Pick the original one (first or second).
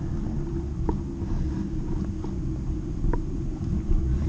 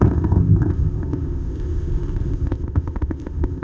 first